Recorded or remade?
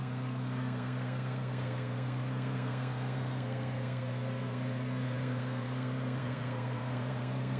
remade